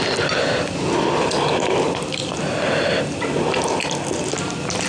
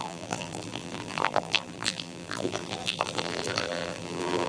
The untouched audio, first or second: first